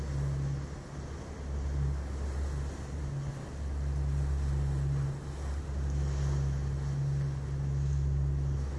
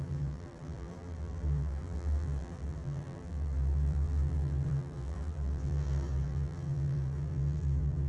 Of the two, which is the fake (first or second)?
second